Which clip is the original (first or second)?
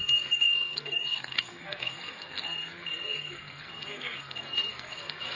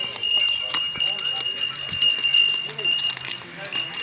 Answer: second